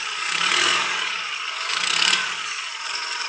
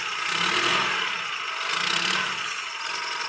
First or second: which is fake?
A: first